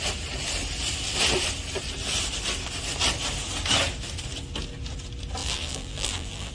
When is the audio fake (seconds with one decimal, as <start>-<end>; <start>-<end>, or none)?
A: 5.4-6.5